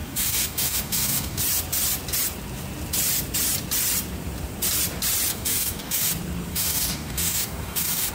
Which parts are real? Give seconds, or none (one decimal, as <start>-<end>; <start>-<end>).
1.4-5.3; 6.1-6.5

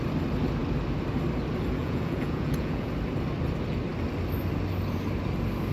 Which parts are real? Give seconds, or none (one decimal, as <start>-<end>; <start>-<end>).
0.0-1.8; 2.9-5.7